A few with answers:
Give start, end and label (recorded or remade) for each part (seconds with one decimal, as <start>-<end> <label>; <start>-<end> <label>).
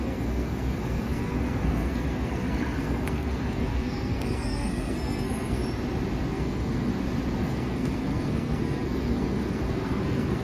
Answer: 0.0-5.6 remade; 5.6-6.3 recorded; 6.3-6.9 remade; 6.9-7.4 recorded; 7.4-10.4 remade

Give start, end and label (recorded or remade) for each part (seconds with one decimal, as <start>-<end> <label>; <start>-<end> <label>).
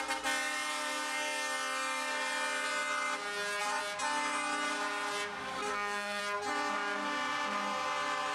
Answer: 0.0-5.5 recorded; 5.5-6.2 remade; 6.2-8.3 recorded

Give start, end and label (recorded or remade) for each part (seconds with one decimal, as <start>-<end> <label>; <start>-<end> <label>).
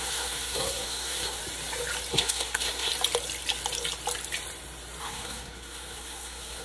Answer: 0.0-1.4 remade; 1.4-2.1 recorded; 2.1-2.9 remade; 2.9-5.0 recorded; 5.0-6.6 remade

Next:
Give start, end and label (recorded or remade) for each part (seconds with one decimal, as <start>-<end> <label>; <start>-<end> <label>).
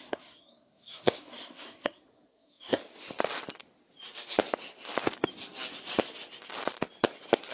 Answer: 0.0-2.8 remade; 2.8-7.5 recorded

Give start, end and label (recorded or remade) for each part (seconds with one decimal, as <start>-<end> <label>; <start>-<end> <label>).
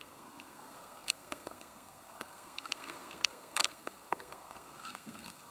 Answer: 0.0-5.5 remade